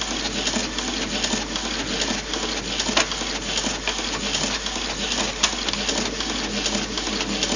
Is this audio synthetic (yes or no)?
no